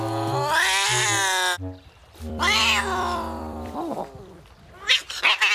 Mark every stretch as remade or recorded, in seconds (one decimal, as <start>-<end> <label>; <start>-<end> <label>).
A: 0.0-2.0 recorded; 2.0-4.0 remade; 4.0-5.5 recorded